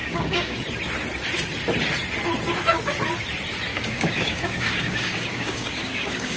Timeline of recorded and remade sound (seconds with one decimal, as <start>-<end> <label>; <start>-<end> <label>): 0.0-0.6 remade; 0.6-3.7 recorded; 3.7-6.4 remade